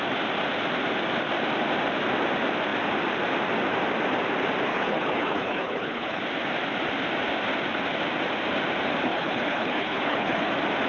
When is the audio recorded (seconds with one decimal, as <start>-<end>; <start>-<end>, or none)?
0.0-4.7; 6.2-9.1; 10.5-10.9